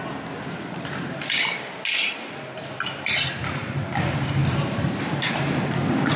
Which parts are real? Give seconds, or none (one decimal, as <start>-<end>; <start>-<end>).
0.0-4.4; 5.7-6.2